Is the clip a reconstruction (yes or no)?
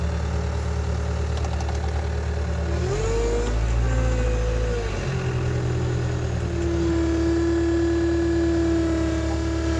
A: no